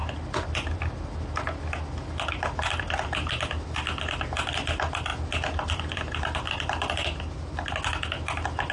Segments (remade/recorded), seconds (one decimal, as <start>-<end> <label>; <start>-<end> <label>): 0.0-8.7 recorded